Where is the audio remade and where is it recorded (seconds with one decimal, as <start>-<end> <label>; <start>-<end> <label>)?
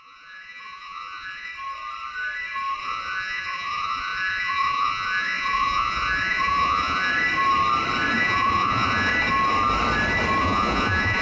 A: 0.0-1.5 remade; 1.5-2.8 recorded; 2.8-7.1 remade; 7.1-8.2 recorded; 8.2-9.1 remade; 9.1-10.4 recorded; 10.4-11.2 remade